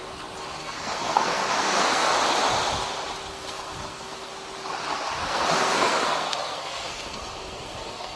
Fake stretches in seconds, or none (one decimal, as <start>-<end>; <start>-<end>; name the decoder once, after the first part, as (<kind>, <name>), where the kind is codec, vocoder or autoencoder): 0.6-2.1 (codec, SNAC); 3.3-4.3; 4.9-8.2